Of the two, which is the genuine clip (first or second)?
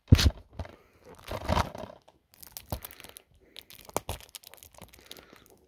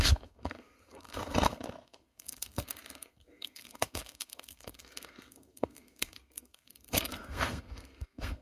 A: first